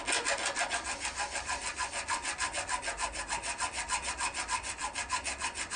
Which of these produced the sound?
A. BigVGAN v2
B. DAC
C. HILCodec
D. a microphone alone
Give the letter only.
D